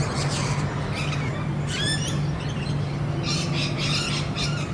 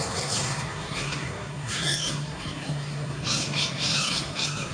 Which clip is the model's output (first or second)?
second